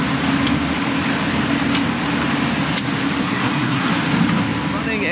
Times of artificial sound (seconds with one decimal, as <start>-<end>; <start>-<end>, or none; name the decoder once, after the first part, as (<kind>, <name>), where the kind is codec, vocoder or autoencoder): 3.2-3.9 (codec, SNAC)